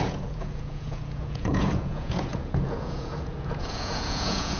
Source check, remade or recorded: remade